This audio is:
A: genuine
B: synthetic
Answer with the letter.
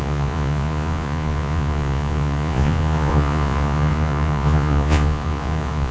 B